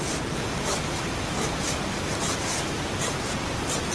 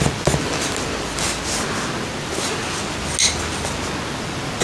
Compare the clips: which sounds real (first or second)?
second